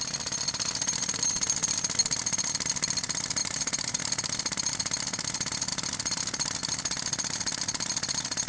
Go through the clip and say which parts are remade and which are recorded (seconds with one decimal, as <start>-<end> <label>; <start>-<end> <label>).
0.0-3.4 recorded; 3.4-4.0 remade; 4.0-8.5 recorded